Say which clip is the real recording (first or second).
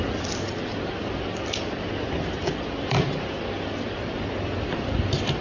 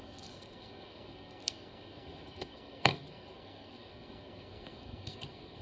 first